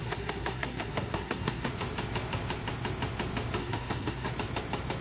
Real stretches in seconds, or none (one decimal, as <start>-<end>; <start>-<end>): 1.7-3.6; 4.3-5.0